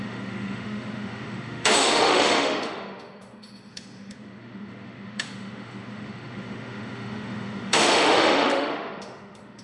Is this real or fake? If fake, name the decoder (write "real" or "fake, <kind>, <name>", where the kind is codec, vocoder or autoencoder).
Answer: fake, autoencoder, DAC-VAE